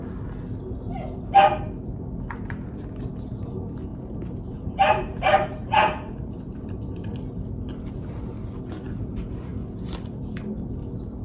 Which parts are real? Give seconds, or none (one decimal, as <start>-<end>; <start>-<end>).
0.0-3.9; 6.4-11.2